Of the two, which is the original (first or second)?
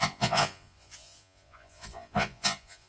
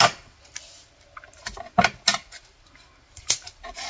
second